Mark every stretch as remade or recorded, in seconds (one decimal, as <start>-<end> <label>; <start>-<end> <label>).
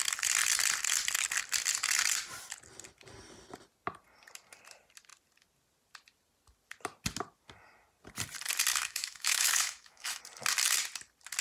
0.0-8.7 recorded; 8.7-10.2 remade; 10.2-11.4 recorded